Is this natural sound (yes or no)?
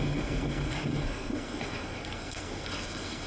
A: no